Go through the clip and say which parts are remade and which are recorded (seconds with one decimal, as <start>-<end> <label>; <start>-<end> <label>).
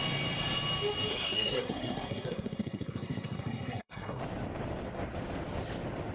0.0-1.1 recorded; 1.1-4.2 remade; 4.2-6.1 recorded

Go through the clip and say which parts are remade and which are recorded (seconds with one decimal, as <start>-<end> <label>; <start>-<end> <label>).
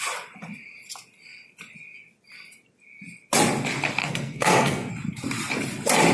0.0-4.0 recorded; 4.0-4.9 remade; 4.9-6.1 recorded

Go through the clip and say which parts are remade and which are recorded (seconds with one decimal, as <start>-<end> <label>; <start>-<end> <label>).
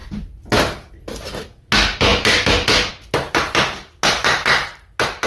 0.0-5.3 recorded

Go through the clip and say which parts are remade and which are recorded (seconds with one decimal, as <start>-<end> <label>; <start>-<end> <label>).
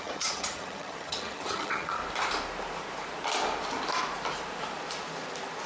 0.0-2.0 remade; 2.0-5.7 recorded